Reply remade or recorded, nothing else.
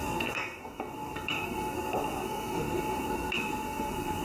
remade